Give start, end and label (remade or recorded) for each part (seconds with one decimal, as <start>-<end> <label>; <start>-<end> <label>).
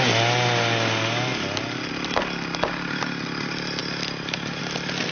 0.0-5.1 recorded